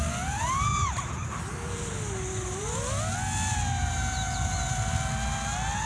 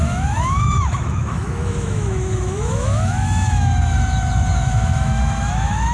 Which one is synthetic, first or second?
second